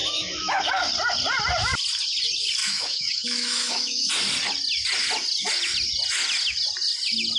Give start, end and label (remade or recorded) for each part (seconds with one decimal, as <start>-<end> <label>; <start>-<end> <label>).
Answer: 0.0-0.6 remade; 0.6-2.6 recorded; 2.6-4.1 remade; 4.1-7.4 recorded